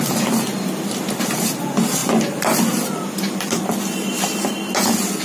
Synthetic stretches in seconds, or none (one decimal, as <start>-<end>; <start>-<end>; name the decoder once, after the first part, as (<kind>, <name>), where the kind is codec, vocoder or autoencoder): none